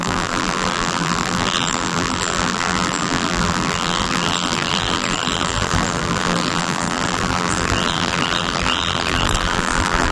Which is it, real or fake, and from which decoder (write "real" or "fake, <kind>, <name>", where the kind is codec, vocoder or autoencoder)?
fake, vocoder, BigVGAN v2